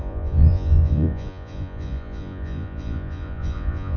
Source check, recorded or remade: remade